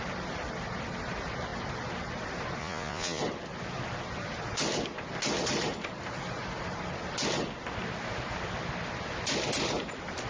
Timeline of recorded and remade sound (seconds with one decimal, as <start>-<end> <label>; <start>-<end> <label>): 0.0-2.6 recorded; 2.6-3.2 remade; 3.2-10.3 recorded